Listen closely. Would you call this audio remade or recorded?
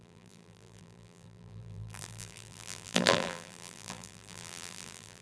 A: remade